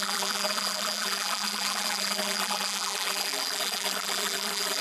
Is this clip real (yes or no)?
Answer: no